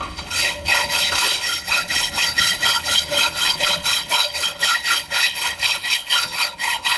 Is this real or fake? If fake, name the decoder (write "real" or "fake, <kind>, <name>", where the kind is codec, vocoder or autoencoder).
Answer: fake, codec, HILCodec